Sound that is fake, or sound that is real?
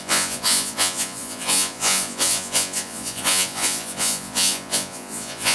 fake